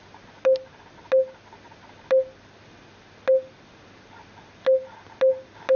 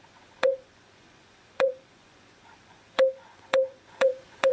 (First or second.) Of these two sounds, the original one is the first